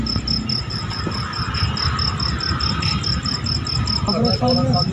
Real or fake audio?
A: real